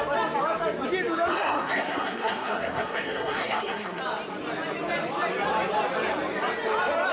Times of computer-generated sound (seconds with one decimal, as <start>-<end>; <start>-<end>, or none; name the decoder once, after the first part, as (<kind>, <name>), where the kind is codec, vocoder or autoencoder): 1.3-4.0 (codec, SNAC)